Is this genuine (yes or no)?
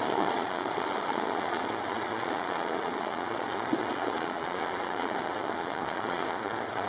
no